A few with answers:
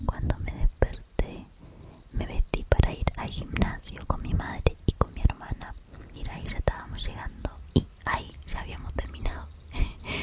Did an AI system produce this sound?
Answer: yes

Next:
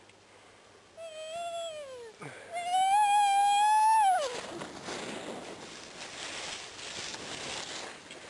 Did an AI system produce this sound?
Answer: no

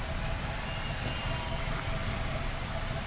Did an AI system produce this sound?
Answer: yes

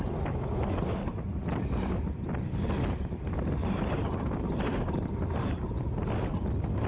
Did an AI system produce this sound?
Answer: no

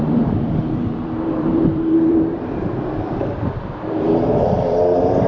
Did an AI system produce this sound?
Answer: yes